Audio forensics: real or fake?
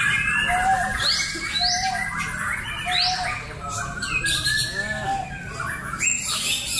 real